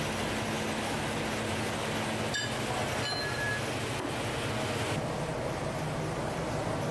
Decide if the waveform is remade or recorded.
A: recorded